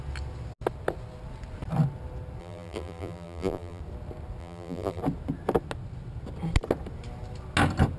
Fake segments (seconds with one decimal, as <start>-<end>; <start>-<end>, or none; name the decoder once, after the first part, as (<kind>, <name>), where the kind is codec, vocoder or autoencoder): 2.4-3.8 (vocoder, BigVGAN v2); 4.4-5.0